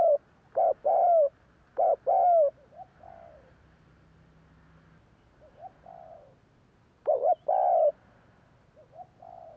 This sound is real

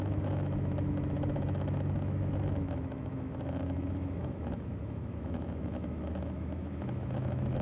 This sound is fake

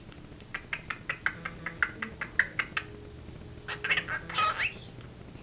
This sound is real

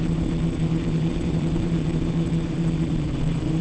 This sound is fake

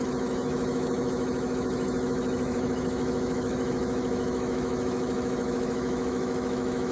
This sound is fake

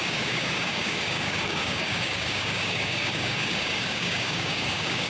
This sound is fake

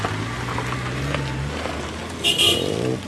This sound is real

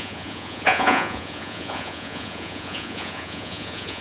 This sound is fake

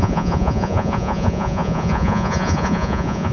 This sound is fake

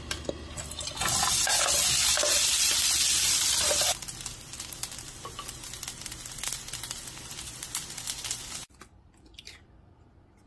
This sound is real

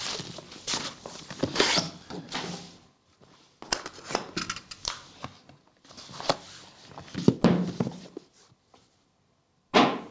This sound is real